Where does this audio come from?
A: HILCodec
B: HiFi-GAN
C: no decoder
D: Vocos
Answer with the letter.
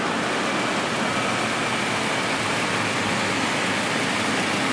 C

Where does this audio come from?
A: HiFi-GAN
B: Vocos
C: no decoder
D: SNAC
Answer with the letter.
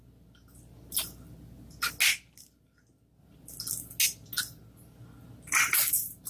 C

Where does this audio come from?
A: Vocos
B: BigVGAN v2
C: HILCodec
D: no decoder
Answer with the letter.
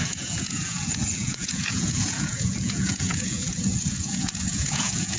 A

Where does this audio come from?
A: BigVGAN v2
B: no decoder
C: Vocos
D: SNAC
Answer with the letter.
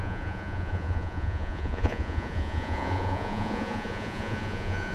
C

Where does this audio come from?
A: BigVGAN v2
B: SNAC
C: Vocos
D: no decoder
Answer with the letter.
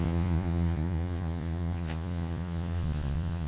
C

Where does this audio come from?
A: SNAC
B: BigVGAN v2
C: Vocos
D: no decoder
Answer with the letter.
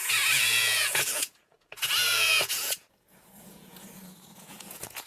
C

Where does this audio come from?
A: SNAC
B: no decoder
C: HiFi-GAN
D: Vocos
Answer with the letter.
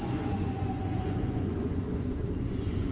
D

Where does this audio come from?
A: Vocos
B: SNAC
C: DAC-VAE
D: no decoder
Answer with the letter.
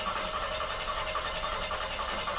D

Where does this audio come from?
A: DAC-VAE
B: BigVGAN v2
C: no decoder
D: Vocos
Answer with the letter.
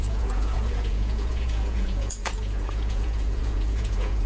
D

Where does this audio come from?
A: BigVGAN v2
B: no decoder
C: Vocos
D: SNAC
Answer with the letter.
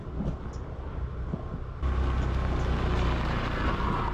B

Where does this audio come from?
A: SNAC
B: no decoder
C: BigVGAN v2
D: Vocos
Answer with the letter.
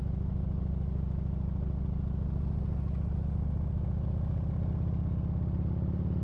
B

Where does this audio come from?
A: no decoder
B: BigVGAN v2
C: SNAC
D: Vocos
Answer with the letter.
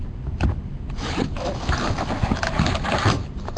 A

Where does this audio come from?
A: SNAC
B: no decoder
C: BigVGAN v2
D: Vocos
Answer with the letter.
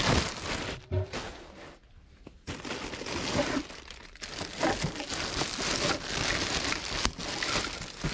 B